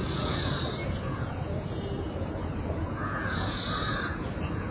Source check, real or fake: fake